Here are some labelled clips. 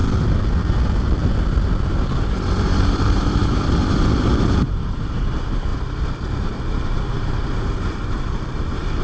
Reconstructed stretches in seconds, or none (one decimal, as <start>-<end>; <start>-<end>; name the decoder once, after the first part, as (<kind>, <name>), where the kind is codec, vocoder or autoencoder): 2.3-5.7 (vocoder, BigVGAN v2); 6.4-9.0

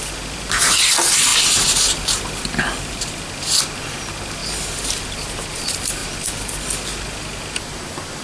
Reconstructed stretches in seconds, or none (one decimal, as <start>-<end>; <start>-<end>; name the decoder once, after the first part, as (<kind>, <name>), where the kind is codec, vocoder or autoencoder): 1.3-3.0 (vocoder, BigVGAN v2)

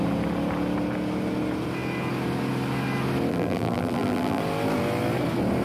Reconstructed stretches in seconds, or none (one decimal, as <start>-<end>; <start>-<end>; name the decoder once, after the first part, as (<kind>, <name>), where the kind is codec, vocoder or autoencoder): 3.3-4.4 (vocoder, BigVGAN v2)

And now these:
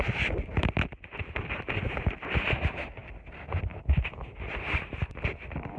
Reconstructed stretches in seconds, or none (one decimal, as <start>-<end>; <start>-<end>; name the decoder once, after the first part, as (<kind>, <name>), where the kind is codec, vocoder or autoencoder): 0.0-5.8 (vocoder, BigVGAN v2)